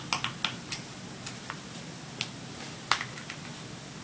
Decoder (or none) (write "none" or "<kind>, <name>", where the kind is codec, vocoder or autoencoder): none